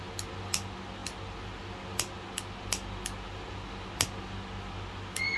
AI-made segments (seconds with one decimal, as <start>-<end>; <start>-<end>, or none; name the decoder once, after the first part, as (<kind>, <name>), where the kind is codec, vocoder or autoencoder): none